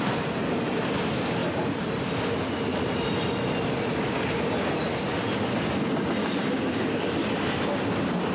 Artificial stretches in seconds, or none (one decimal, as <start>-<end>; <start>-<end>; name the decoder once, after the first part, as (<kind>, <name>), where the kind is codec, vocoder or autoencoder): 6.2-7.1 (codec, DAC)